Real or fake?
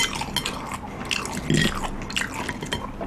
real